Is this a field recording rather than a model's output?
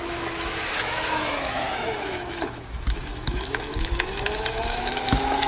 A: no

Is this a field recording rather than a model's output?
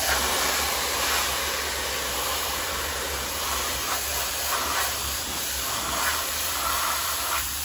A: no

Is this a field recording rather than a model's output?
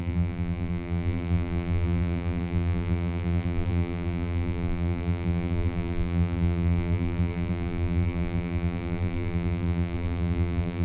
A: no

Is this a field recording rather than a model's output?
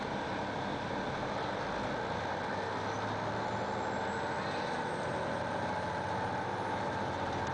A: yes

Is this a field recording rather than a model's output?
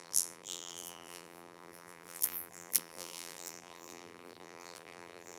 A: no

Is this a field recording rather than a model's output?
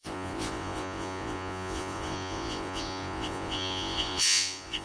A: no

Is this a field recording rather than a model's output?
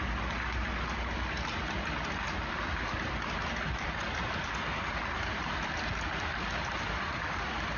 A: yes